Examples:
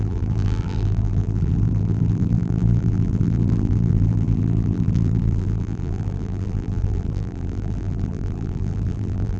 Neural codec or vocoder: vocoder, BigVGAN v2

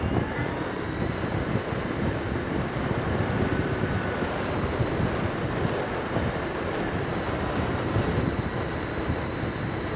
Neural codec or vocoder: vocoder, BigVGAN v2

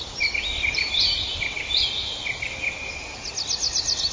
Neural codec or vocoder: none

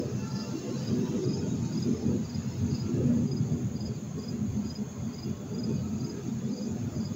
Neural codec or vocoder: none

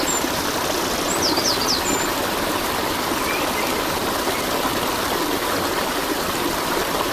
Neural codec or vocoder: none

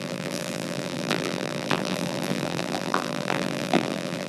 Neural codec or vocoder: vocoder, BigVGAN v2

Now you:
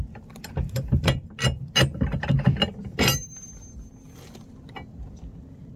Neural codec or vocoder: none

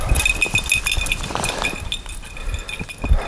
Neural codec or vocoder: none